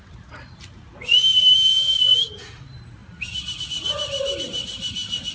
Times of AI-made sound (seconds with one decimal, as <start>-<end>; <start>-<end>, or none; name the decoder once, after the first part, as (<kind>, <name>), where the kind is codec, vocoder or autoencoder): none